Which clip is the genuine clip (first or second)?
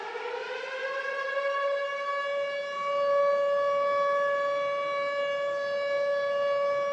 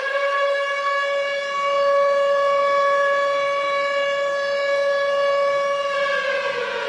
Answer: first